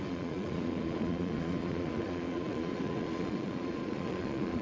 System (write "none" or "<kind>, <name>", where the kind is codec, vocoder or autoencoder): vocoder, Vocos